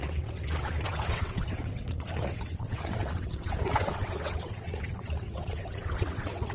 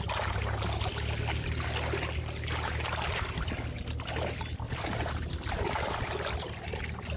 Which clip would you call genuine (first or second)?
second